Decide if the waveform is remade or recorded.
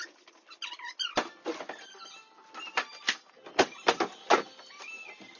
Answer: recorded